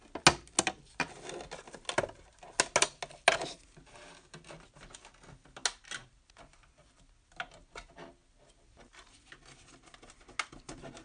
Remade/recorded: recorded